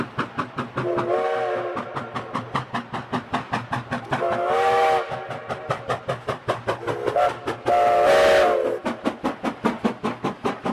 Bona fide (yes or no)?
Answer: yes